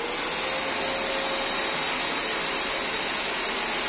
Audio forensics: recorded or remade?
recorded